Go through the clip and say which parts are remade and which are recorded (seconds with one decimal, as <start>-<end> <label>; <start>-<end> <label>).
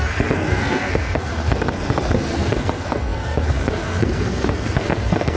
0.0-5.4 remade